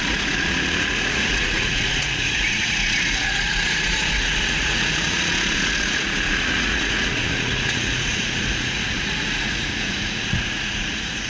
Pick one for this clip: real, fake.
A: fake